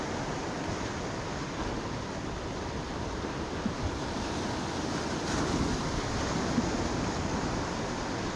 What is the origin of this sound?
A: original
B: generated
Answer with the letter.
A